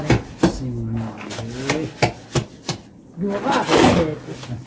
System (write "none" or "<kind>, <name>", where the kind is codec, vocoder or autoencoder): none